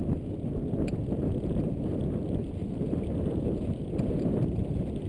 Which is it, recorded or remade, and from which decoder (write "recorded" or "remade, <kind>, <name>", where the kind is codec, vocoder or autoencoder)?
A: remade, vocoder, BigVGAN v2